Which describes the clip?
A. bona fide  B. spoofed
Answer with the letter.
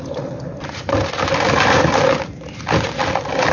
A